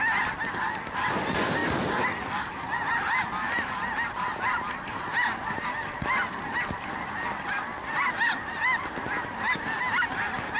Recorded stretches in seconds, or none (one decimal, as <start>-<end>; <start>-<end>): 0.0-10.6